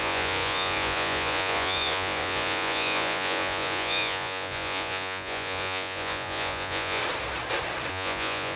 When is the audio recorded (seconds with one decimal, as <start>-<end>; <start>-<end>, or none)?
7.0-7.9